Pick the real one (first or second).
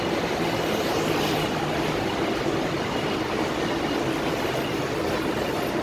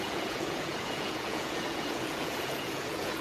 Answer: first